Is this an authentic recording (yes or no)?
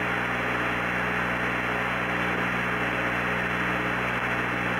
yes